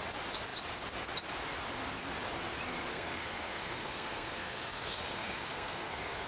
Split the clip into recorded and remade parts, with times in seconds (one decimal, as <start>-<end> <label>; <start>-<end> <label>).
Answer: 0.0-2.9 recorded; 2.9-6.3 remade